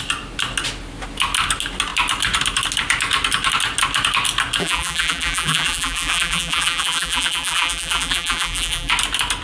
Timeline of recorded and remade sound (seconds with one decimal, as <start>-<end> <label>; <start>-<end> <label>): 0.0-4.6 recorded; 4.6-8.9 remade; 8.9-9.4 recorded